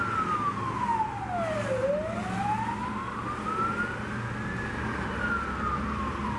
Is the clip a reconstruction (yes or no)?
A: no